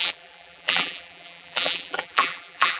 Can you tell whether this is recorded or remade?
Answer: remade